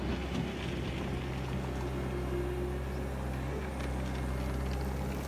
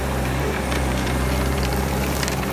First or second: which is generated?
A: second